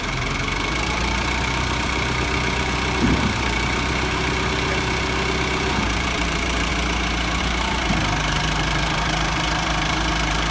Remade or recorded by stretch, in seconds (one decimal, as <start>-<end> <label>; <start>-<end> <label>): 0.0-6.7 remade; 6.7-7.4 recorded; 7.4-10.5 remade